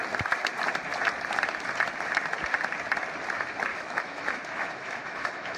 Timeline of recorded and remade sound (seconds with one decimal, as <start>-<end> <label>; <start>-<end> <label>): 0.0-3.7 recorded; 3.7-5.6 remade